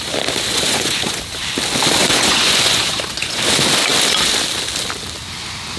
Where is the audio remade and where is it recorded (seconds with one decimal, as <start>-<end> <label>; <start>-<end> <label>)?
0.0-0.5 recorded; 0.5-1.2 remade; 1.2-2.0 recorded; 2.0-3.4 remade; 3.4-5.8 recorded